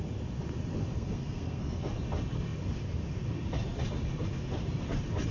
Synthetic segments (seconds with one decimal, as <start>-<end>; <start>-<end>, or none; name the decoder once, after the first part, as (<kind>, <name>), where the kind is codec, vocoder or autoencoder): 0.9-1.8 (codec, SNAC)